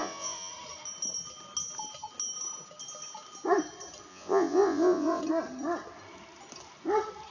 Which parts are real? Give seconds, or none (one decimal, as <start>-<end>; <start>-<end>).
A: 0.5-4.1; 5.2-7.3